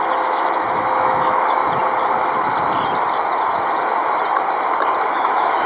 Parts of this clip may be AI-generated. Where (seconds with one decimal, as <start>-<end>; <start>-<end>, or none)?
0.0-1.6; 5.0-5.7